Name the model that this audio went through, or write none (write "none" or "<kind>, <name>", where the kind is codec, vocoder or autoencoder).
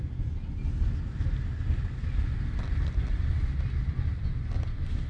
none